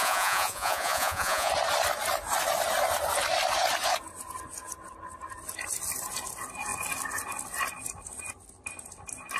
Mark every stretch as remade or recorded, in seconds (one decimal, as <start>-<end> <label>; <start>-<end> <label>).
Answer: 0.0-1.5 remade; 1.5-9.4 recorded